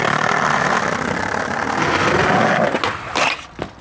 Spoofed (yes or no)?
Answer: no